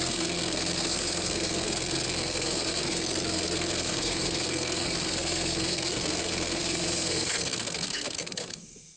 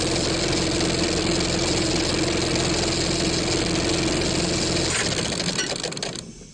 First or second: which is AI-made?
first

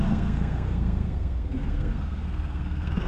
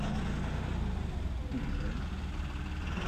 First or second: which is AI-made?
first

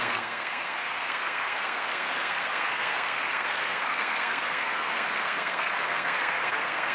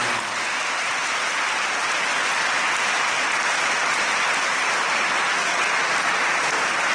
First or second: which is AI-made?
first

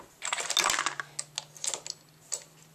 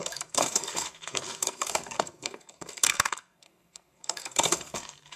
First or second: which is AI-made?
second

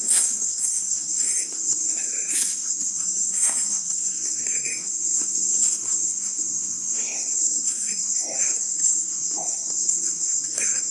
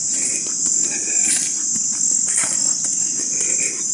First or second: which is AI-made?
first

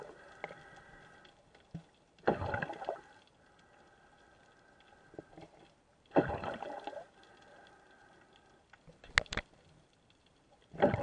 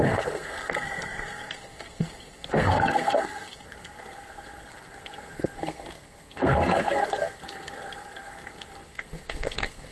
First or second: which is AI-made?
second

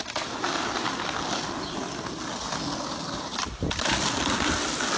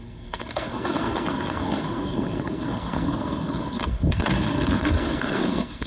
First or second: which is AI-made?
second